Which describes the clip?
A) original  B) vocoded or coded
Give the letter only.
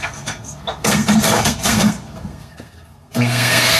B